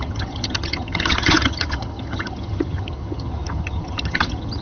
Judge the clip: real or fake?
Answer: fake